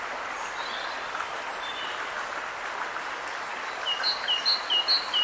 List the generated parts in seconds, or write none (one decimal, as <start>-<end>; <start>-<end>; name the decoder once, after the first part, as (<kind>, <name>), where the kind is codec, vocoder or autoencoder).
none